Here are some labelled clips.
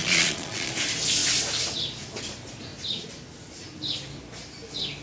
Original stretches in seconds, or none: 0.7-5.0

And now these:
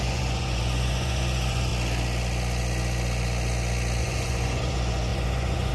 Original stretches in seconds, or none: 1.7-4.0